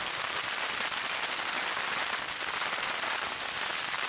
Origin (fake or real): real